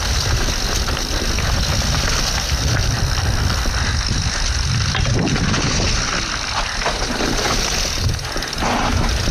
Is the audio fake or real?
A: real